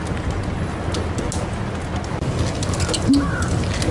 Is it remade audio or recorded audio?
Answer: recorded